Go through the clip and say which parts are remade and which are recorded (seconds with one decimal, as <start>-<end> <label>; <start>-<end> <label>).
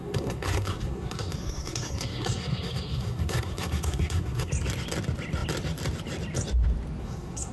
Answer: 0.0-4.5 remade; 4.5-7.0 recorded; 7.0-7.5 remade